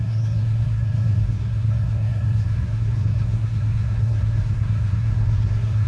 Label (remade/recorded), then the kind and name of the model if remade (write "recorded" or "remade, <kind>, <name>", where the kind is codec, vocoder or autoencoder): remade, codec, SNAC